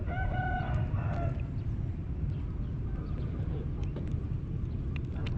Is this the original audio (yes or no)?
yes